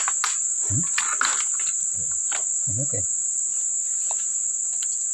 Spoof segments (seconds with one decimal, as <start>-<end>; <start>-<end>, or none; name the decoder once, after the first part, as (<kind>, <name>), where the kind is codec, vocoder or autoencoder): none

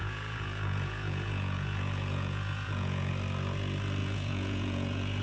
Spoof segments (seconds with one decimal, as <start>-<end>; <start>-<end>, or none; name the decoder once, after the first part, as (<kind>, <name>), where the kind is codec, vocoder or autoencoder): 0.0-3.1 (vocoder, Vocos); 4.0-5.2

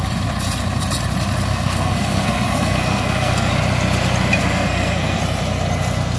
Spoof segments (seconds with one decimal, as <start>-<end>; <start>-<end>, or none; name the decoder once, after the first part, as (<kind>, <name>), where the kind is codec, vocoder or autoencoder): 1.5-3.5 (codec, SNAC); 4.4-5.2

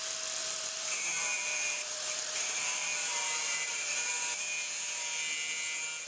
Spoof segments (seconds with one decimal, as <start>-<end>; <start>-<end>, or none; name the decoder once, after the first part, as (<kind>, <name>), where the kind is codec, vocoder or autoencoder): 0.4-4.1 (vocoder, BigVGAN v2)

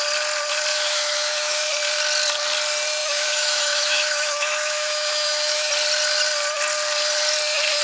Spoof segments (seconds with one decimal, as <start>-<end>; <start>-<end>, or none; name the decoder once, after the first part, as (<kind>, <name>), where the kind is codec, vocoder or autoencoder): 0.7-1.7 (autoencoder, DAC-VAE); 3.0-5.7

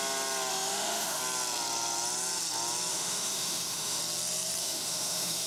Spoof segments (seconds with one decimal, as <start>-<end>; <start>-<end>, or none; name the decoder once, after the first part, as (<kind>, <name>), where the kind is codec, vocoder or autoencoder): 0.5-1.2 (autoencoder, DAC-VAE); 2.9-4.0; 4.6-5.5